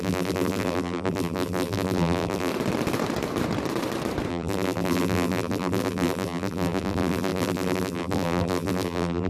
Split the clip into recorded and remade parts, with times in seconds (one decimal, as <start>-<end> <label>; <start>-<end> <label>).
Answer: 0.0-2.5 remade; 2.5-4.3 recorded; 4.3-9.3 remade